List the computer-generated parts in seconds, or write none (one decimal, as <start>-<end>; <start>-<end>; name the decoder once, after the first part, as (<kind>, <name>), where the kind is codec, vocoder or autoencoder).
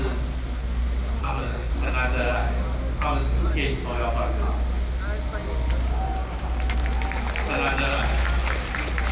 1.2-1.7 (codec, SNAC)